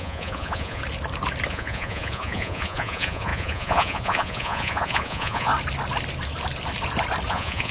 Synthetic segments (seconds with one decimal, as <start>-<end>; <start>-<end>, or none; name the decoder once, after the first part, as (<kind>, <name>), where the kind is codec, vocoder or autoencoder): 0.0-0.8 (vocoder, Vocos); 1.5-5.5; 7.3-7.7